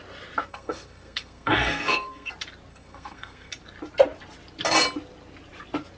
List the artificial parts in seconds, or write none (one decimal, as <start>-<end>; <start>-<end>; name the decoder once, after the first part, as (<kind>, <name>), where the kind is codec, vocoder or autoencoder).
0.5-2.3 (codec, SNAC); 2.7-3.5